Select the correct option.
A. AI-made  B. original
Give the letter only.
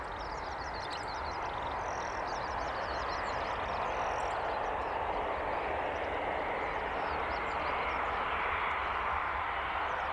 B